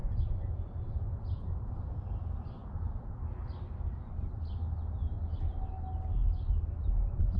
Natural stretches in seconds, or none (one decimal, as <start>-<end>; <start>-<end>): 1.9-2.6; 3.2-7.4